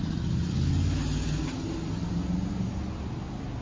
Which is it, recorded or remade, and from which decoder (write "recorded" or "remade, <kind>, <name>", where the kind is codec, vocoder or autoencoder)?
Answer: recorded